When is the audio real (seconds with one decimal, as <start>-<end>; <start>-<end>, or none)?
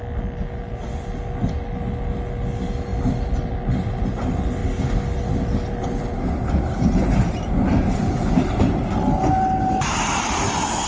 0.0-10.9